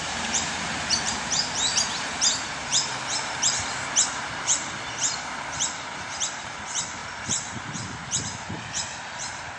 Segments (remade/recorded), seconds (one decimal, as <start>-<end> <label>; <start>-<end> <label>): 0.0-2.7 remade; 2.7-6.4 recorded; 6.4-9.6 remade